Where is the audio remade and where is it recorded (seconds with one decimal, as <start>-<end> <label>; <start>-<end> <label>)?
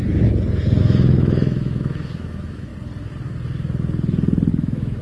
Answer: 0.0-0.8 recorded; 0.8-2.7 remade; 2.7-4.5 recorded; 4.5-5.0 remade